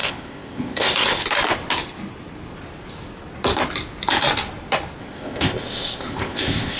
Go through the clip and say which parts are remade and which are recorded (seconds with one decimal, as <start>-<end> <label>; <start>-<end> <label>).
0.0-1.2 remade; 1.2-5.0 recorded; 5.0-6.8 remade